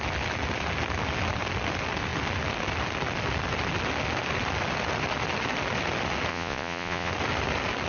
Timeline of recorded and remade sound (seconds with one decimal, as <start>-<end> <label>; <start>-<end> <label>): 0.0-6.3 recorded; 6.3-7.1 remade; 7.1-7.9 recorded